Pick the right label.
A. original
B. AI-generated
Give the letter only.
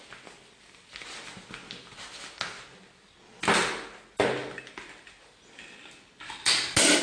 A